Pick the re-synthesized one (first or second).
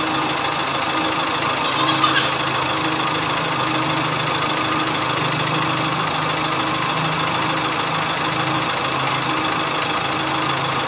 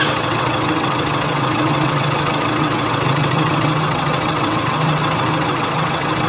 second